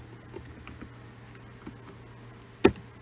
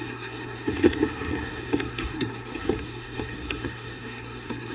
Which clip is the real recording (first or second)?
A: first